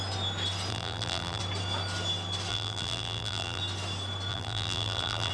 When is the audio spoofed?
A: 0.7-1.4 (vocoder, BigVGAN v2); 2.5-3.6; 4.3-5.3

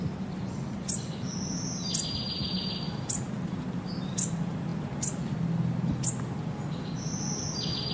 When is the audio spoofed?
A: none

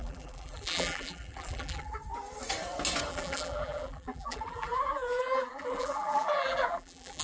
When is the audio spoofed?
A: 0.0-2.0 (vocoder, BigVGAN v2); 3.1-7.2

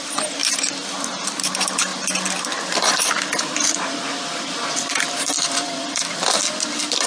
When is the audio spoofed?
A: 1.9-6.2 (vocoder, BigVGAN v2)

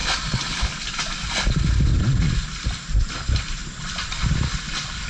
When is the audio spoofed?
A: none

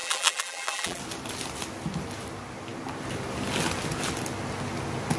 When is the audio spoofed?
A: 0.0-1.0 (vocoder, BigVGAN v2)

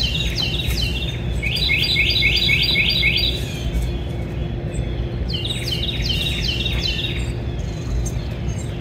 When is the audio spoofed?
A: none